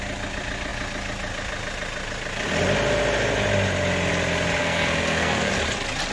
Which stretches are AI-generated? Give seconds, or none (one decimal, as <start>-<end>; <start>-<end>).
4.6-5.5